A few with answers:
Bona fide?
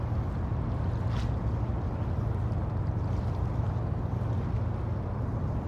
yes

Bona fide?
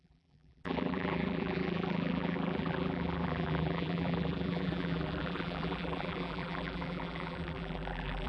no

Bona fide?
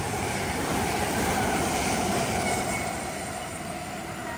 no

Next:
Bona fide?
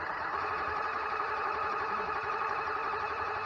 no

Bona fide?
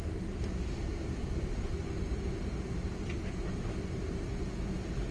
yes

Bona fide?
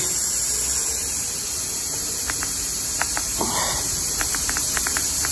no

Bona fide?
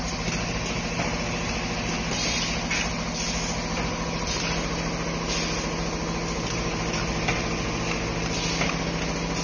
yes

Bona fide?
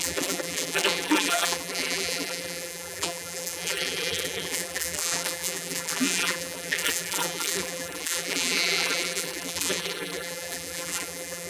no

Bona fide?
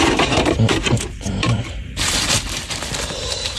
no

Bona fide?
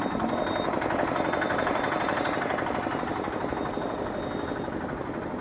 yes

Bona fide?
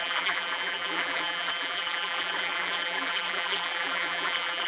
no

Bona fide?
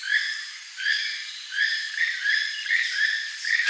no